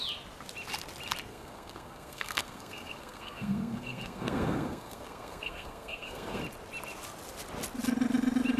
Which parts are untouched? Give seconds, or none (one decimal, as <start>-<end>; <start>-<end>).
0.0-1.3; 6.4-8.6